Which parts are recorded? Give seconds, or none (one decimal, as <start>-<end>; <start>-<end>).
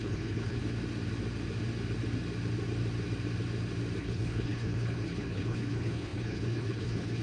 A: 0.6-4.0